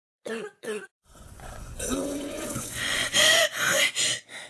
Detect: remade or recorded remade